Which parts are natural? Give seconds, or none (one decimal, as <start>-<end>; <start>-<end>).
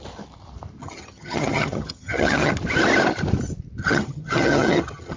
0.0-0.8; 2.5-3.8